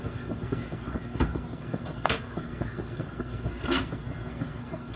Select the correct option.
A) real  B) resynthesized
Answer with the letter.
B